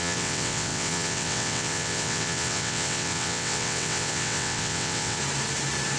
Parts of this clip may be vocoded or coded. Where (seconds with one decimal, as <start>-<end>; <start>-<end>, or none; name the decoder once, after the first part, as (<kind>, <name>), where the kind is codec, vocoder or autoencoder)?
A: 0.0-5.2 (vocoder, WaveNeXt)